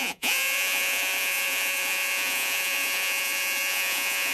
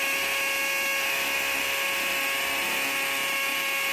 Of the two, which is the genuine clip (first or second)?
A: second